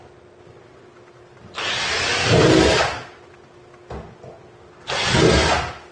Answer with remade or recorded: recorded